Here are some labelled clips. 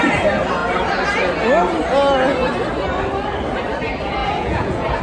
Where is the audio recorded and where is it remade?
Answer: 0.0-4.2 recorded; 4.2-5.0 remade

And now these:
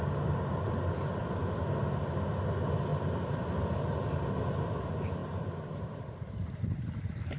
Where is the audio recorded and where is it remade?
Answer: 0.0-2.9 recorded; 2.9-4.1 remade; 4.1-5.2 recorded; 5.2-7.4 remade

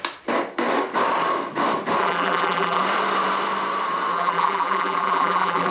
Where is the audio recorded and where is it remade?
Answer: 0.0-2.0 recorded; 2.0-2.8 remade; 2.8-4.1 recorded; 4.1-5.7 remade

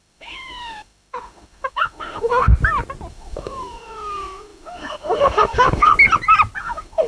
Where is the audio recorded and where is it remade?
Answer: 0.0-2.5 remade; 2.5-3.1 recorded; 3.1-5.9 remade; 5.9-6.6 recorded; 6.6-7.1 remade

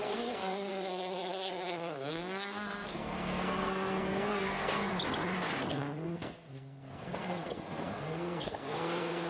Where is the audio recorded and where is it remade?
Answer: 0.0-4.9 remade; 4.9-5.7 recorded; 5.7-9.3 remade